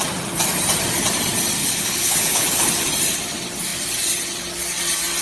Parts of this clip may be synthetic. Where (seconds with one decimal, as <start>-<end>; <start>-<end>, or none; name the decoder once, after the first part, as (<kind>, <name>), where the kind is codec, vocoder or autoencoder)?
1.6-2.7 (codec, HILCodec)